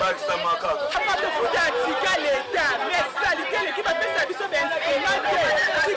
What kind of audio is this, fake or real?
real